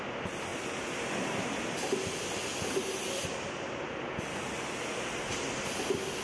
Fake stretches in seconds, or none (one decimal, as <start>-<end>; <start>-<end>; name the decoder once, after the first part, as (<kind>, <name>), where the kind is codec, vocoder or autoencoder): none